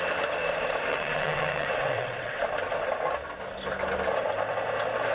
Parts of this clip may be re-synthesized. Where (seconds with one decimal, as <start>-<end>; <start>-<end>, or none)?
0.9-2.4

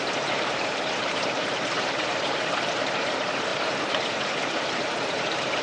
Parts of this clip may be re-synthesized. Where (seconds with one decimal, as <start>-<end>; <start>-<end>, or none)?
0.0-5.6

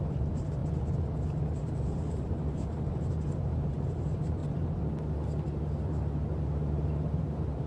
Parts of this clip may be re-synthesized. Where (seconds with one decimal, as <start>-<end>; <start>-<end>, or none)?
0.0-0.6; 2.1-4.4; 7.2-7.7

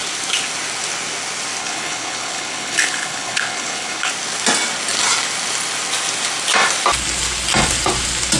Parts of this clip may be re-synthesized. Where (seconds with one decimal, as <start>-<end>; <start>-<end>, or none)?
1.6-4.1

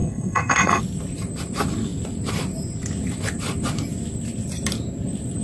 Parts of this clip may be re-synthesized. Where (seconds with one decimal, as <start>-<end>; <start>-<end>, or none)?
0.0-0.8

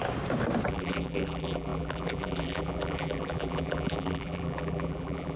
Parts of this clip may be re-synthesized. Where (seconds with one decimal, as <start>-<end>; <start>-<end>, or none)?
0.7-5.4